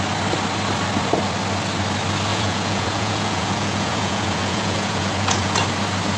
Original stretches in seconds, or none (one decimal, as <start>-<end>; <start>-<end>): 0.0-2.3; 5.6-6.2